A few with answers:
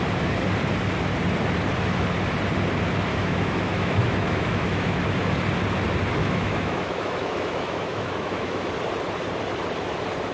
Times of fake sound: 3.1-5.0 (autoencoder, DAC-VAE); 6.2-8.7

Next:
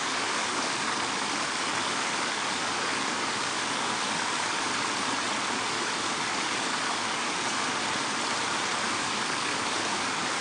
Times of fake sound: 0.0-4.7 (codec, DAC); 5.7-7.8; 9.0-10.4

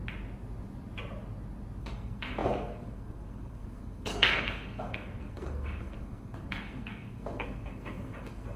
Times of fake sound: 1.8-8.6 (codec, SNAC)

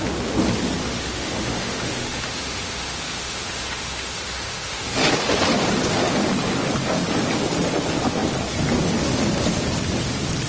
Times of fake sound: 0.8-5.1 (autoencoder, DAC-VAE)

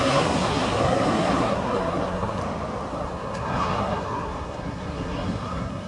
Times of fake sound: 0.0-2.4 (codec, SNAC); 2.9-5.9